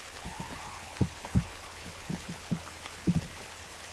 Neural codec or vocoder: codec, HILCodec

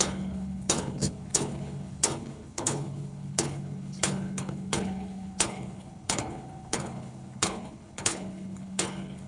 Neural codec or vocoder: codec, HILCodec